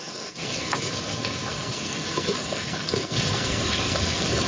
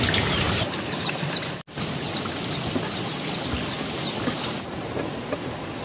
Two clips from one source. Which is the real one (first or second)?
second